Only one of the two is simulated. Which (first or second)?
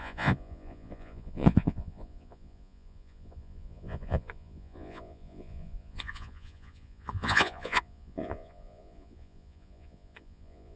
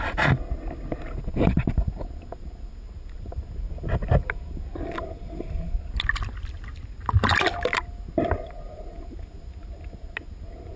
first